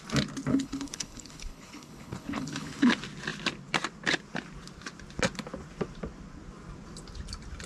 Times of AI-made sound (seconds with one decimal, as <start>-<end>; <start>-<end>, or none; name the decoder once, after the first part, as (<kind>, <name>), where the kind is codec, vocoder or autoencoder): 0.5-2.9 (codec, HILCodec)